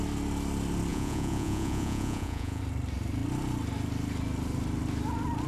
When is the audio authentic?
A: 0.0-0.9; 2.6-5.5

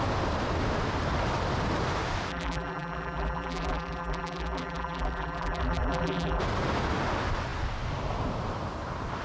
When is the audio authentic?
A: 0.0-2.3; 6.4-9.2

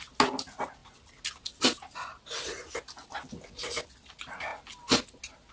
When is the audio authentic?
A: 0.0-5.5

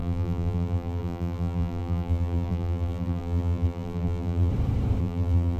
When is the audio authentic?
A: 4.5-5.0